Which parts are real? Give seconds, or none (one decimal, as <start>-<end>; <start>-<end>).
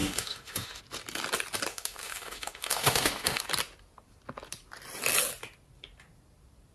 0.8-1.7; 3.4-6.7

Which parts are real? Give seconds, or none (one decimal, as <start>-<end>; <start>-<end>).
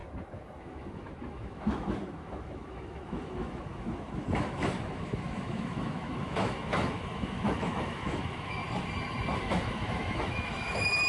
0.0-0.6; 8.6-9.4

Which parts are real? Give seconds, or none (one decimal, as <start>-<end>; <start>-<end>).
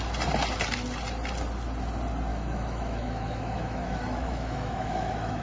0.0-2.3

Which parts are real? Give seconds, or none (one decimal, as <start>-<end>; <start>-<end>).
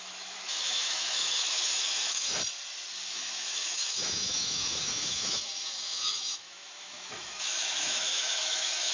2.3-3.1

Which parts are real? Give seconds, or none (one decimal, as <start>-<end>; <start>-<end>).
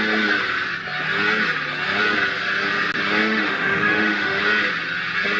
0.0-3.2; 4.4-5.4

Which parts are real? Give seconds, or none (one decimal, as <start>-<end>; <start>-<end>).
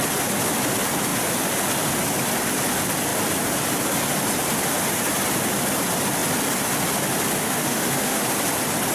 0.0-7.4; 8.2-8.9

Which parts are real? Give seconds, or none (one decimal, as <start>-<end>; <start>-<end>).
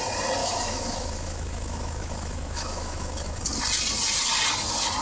0.0-0.4; 3.4-5.0